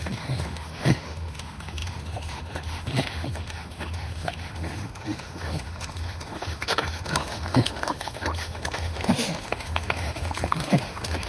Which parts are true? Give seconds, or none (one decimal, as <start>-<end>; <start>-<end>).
none